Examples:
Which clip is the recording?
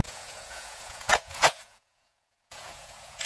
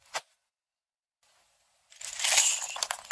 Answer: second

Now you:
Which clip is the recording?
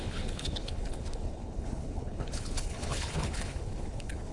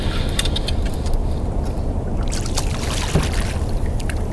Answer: second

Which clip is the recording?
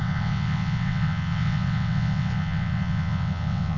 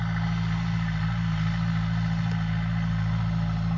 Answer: second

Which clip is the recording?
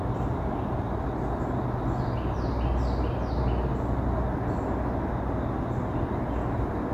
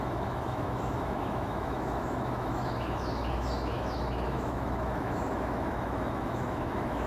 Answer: first